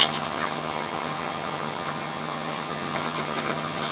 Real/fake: fake